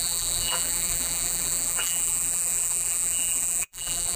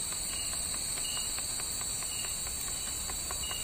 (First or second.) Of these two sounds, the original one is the second